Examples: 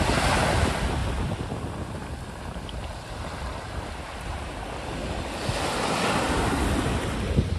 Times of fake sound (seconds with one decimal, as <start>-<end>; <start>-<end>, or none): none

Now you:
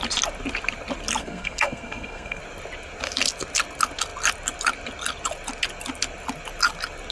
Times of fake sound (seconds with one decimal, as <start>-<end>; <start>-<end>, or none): 1.2-2.4

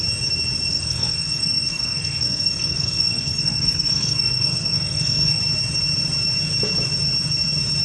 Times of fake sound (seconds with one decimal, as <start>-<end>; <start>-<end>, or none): 0.7-5.4

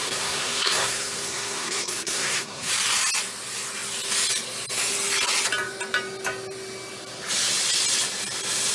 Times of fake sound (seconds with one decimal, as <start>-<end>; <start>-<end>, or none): 0.0-2.7

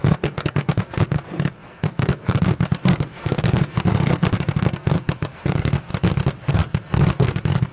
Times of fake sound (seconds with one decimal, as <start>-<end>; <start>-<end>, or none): 0.0-5.9; 6.5-7.7

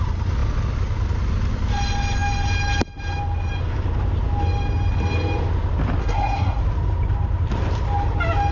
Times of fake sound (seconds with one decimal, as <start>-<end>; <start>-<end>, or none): 6.0-6.6

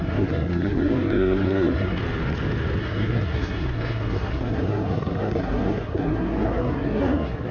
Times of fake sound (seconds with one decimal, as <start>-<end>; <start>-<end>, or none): 0.0-2.0; 2.8-7.5